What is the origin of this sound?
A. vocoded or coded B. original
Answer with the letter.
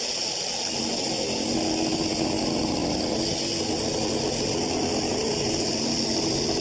B